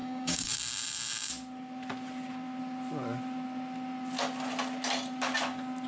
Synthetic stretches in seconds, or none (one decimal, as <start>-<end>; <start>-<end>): 0.0-0.6